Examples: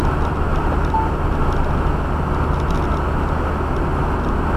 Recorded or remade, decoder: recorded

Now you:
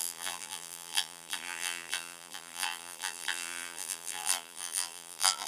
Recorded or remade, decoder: remade, vocoder, BigVGAN v2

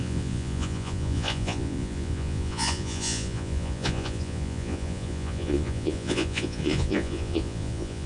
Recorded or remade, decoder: remade, vocoder, Vocos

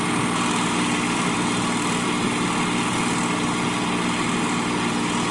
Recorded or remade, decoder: recorded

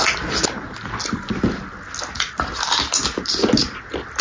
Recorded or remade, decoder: recorded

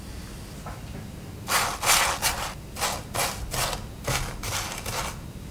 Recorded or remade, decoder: recorded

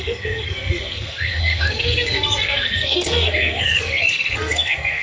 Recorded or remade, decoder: remade, codec, SNAC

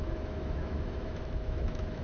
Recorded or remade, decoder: remade, autoencoder, DAC-VAE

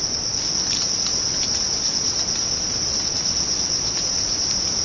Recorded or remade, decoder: recorded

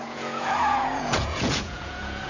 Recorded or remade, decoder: remade, vocoder, Vocos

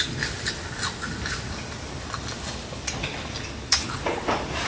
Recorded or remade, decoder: recorded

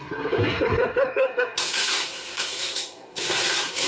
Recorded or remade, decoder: remade, codec, SNAC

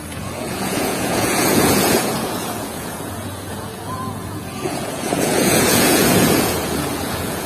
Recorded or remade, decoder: remade, vocoder, Vocos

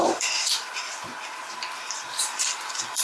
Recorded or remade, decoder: remade, vocoder, BigVGAN v2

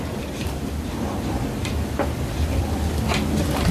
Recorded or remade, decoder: remade, vocoder, BigVGAN v2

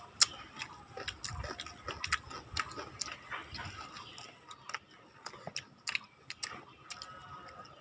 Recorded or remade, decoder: recorded